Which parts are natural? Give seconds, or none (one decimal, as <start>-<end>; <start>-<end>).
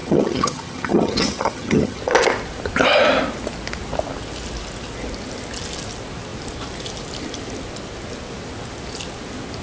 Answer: 2.0-9.6